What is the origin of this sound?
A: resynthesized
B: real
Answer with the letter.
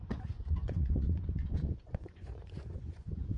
A